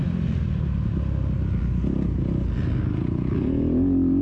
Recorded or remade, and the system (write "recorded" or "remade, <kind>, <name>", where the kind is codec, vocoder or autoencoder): recorded